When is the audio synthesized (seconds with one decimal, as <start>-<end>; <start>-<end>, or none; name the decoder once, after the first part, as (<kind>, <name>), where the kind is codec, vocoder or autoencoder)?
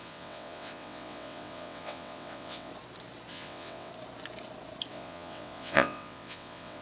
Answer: 0.0-2.7 (vocoder, WaveNeXt); 3.3-3.9; 4.9-6.8